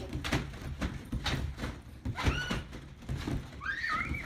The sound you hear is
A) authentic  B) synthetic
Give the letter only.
A